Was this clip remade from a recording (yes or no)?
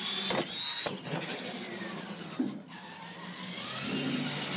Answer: no